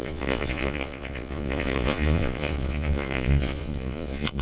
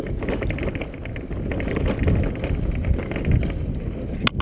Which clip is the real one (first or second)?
second